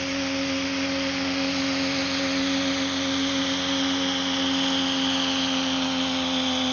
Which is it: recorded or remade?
recorded